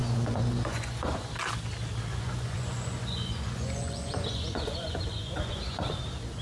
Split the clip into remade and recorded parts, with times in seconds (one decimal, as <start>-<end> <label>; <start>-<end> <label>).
0.0-1.3 remade; 1.3-2.1 recorded; 2.1-5.9 remade; 5.9-6.4 recorded